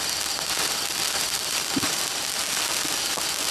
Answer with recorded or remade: recorded